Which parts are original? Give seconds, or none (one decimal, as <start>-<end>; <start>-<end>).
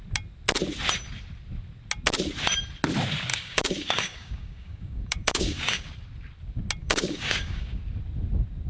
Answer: 0.0-3.3; 5.9-6.8; 7.8-8.7